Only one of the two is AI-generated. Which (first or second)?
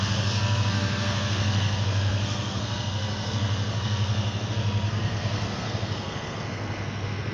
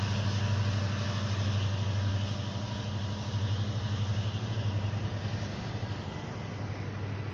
first